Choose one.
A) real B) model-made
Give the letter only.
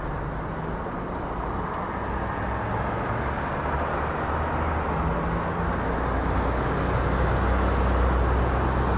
A